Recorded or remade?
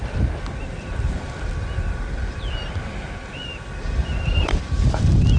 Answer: recorded